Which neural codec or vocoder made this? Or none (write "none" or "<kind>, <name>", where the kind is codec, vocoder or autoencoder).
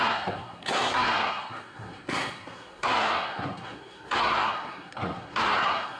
codec, SNAC